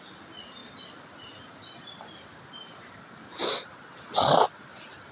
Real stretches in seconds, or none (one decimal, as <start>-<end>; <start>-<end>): 0.0-0.6; 3.7-5.1